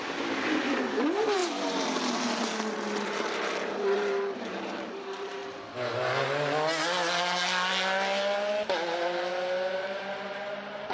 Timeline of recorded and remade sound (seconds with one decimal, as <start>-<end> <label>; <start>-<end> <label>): 0.0-5.4 remade; 5.4-9.7 recorded; 9.7-10.9 remade